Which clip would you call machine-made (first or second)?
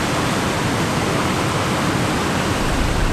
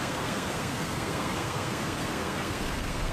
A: second